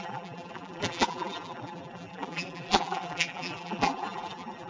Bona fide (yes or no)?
no